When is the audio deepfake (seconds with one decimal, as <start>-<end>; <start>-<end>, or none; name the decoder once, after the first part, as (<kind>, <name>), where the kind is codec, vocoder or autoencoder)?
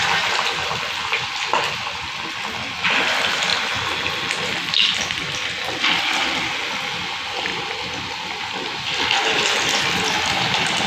none